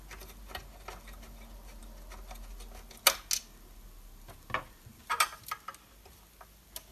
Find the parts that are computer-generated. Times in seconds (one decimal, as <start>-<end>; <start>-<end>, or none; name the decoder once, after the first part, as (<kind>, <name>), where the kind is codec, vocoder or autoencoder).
none